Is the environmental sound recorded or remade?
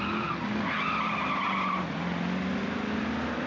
recorded